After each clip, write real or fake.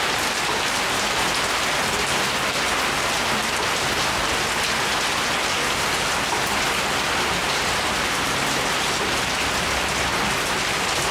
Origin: real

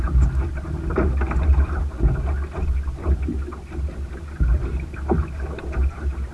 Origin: real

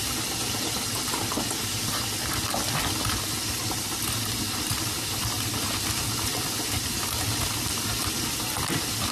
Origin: real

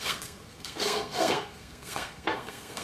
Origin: fake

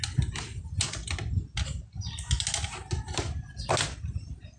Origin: real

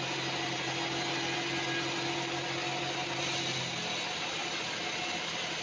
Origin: real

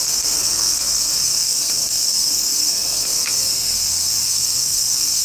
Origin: fake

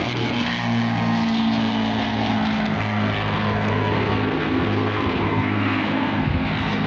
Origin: fake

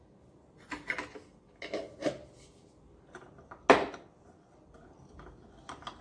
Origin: real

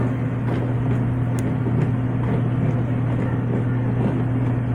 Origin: real